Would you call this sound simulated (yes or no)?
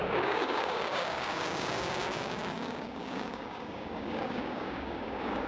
yes